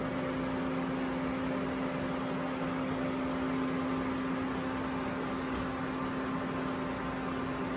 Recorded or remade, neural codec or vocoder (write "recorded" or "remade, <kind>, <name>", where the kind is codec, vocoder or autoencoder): recorded